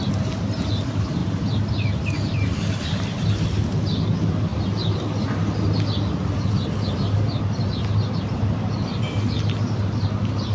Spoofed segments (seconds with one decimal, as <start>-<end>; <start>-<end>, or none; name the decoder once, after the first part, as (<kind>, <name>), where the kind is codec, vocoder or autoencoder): none